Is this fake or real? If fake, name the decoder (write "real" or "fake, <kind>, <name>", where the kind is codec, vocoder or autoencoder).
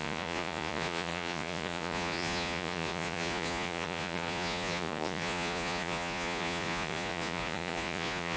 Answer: fake, vocoder, Vocos